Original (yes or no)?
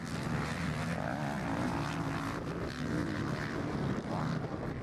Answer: yes